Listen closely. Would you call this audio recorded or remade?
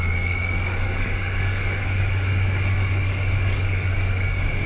remade